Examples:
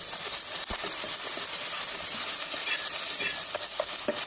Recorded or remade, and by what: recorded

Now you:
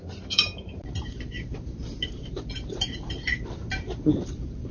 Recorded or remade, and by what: remade, vocoder, BigVGAN v2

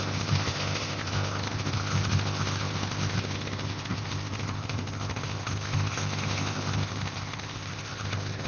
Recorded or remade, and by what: remade, codec, ZipCodec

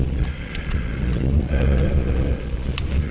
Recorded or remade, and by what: remade, vocoder, Vocos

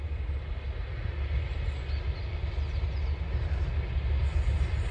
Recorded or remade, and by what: recorded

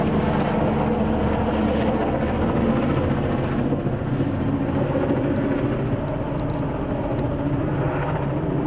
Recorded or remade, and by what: recorded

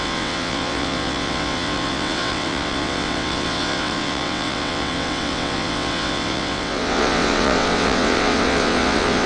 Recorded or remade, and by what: remade, vocoder, WaveNeXt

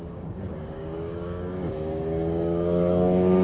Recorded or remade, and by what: remade, codec, DAC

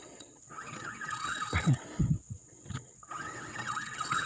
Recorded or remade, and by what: remade, vocoder, WaveNeXt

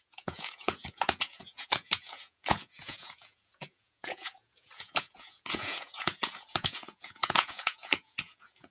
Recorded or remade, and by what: remade, vocoder, Vocos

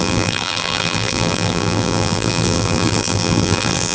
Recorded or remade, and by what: remade, vocoder, BigVGAN v2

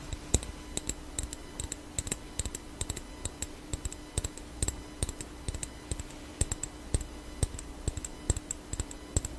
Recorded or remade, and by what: recorded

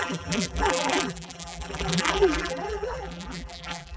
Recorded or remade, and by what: remade, vocoder, BigVGAN v2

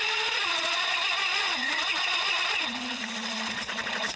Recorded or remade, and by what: remade, vocoder, Vocos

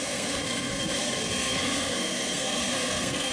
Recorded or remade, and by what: remade, codec, SNAC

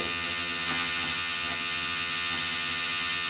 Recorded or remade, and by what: remade, vocoder, HiFi-GAN